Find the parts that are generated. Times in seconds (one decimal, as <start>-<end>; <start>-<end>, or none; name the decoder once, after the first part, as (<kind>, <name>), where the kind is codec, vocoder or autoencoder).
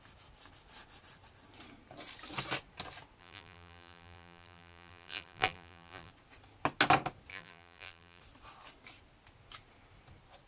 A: 3.2-6.1 (vocoder, BigVGAN v2); 7.3-8.2